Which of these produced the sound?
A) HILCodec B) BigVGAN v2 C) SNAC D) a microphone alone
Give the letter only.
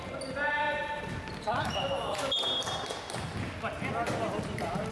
D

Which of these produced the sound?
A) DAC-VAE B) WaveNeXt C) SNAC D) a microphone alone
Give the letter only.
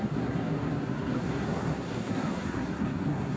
C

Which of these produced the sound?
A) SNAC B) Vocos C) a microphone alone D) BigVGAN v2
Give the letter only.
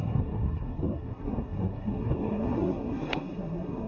A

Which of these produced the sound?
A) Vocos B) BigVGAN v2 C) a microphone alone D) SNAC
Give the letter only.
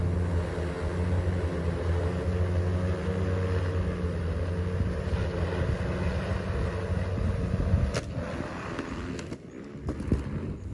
C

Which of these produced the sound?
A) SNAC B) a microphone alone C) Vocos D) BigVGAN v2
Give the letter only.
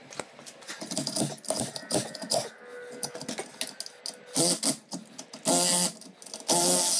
B